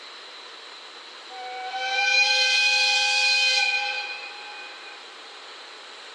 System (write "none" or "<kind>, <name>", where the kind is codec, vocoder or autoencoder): vocoder, BigVGAN v2